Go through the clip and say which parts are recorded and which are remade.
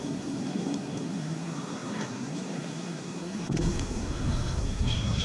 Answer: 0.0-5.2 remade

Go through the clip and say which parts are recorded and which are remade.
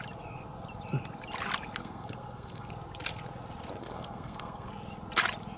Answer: 0.0-1.8 recorded; 1.8-2.7 remade; 2.7-3.8 recorded; 3.8-4.7 remade; 4.7-5.6 recorded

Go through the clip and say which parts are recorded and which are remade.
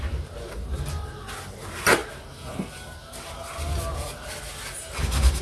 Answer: 0.0-5.4 recorded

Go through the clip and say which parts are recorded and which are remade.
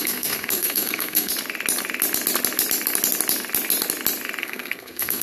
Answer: 0.0-1.3 remade; 1.3-4.4 recorded; 4.4-5.2 remade